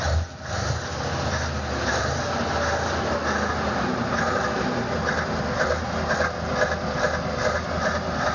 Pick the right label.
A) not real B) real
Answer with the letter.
B